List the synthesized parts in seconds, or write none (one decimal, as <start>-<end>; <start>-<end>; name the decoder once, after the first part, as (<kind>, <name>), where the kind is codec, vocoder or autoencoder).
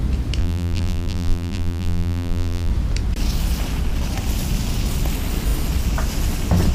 0.4-2.7 (vocoder, BigVGAN v2)